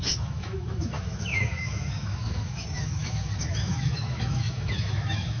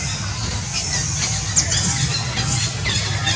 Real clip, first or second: second